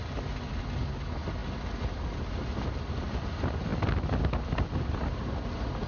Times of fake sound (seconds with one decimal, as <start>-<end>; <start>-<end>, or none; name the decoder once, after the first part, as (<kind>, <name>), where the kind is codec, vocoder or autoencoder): none

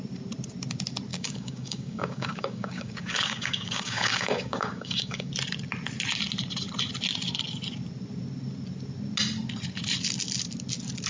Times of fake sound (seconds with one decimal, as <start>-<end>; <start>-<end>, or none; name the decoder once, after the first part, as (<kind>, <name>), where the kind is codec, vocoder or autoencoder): 1.1-5.3 (codec, DAC)

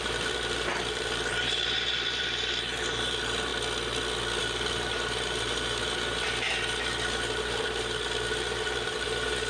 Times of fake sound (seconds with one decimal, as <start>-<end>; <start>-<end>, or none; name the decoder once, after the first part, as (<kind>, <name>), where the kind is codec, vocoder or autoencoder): 0.0-3.5 (vocoder, BigVGAN v2); 4.4-9.5

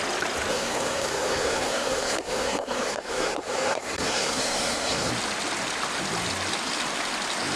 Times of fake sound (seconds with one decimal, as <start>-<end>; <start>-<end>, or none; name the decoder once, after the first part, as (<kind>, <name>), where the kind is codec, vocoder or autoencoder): 0.5-5.1 (codec, SNAC)

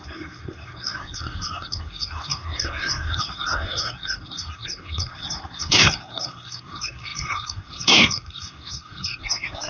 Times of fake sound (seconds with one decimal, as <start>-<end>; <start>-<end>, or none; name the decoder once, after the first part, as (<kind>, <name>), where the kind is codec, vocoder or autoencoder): 0.0-9.7 (codec, SNAC)

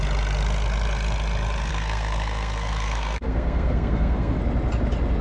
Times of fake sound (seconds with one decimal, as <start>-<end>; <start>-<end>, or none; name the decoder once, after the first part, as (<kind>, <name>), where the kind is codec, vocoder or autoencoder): 1.7-4.4 (codec, SNAC)